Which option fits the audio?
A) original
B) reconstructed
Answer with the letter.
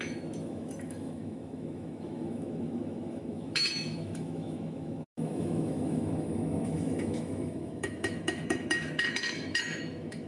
B